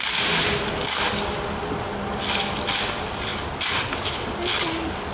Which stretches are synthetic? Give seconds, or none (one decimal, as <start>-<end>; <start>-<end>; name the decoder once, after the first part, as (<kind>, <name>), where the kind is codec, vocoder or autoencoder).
none